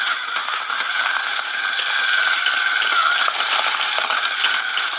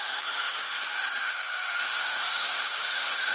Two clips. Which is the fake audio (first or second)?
second